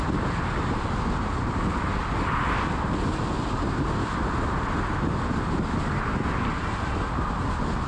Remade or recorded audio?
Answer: recorded